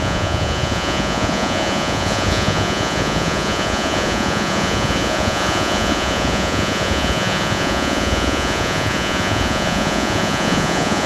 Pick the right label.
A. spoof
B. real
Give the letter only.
A